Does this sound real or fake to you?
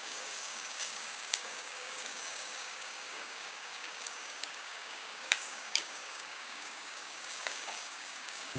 fake